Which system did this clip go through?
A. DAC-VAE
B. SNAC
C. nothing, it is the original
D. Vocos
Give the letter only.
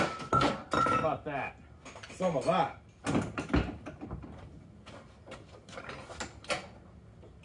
C